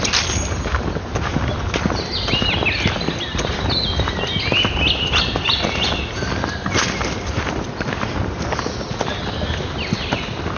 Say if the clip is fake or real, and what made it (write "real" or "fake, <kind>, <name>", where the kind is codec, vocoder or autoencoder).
real